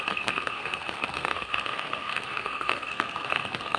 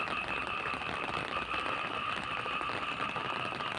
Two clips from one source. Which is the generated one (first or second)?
first